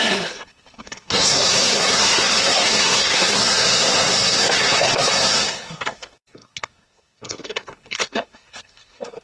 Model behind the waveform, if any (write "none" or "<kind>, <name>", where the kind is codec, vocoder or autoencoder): codec, SNAC